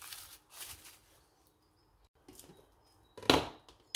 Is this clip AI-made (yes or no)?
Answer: no